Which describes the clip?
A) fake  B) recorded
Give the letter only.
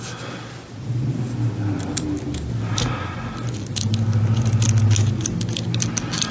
B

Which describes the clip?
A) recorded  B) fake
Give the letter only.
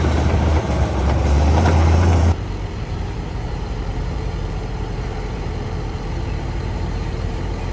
B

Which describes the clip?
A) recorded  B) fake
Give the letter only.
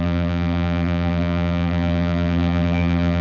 B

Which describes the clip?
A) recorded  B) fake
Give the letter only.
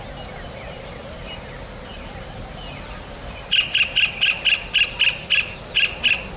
A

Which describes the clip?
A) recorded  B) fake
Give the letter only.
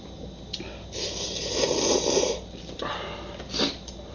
A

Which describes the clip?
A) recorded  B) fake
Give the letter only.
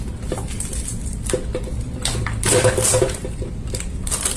B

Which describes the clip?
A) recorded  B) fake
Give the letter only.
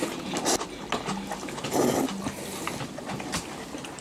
A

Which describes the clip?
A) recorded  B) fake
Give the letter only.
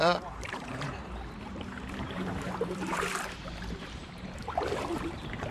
B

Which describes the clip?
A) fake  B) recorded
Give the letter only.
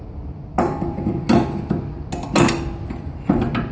B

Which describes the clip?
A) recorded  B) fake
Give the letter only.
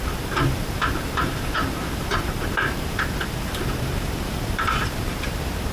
B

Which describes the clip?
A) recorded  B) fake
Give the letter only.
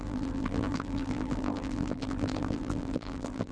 B